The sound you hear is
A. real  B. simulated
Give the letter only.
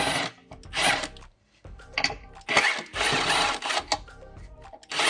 A